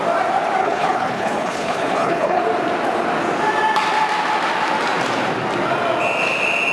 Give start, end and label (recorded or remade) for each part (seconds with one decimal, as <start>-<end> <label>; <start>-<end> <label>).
0.0-0.6 recorded; 0.6-2.4 remade; 2.4-6.7 recorded